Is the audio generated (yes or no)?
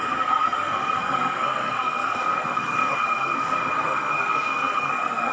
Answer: yes